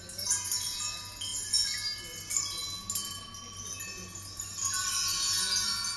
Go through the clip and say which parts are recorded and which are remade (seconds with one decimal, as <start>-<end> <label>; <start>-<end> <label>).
0.0-6.0 recorded